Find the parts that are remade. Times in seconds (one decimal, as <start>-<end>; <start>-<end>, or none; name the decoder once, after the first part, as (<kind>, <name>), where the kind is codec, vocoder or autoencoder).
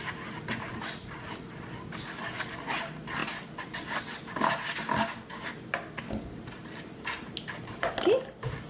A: none